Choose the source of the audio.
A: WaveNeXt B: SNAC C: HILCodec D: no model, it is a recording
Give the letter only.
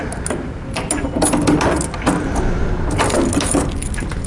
D